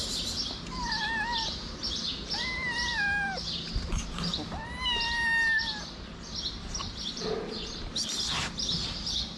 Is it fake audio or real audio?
real